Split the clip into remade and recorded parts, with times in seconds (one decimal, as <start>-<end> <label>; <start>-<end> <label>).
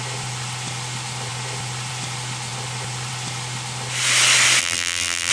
0.0-4.6 recorded; 4.6-5.3 remade